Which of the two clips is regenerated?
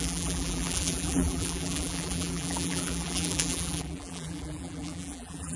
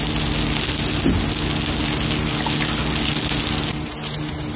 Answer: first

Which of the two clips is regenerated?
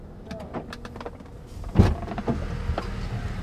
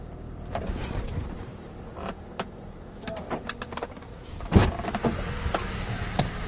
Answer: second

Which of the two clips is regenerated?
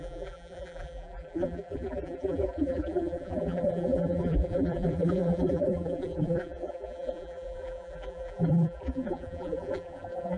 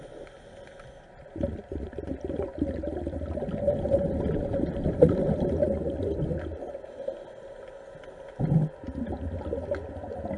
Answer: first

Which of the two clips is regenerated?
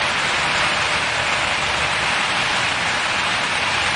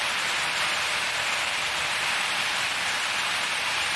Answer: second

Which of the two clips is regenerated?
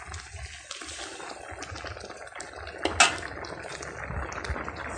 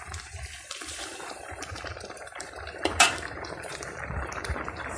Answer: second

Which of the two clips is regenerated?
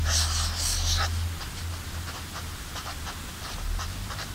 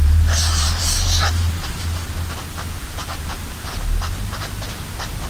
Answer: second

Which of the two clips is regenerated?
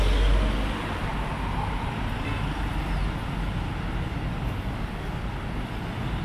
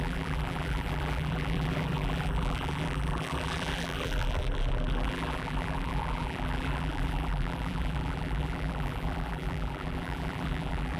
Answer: second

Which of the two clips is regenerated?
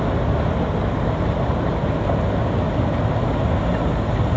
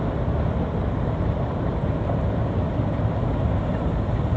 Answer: second